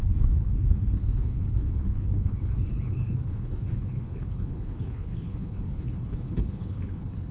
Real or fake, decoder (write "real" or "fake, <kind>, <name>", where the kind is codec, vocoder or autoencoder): fake, codec, HILCodec